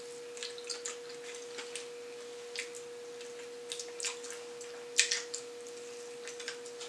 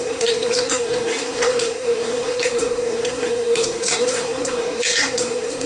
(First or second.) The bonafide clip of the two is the first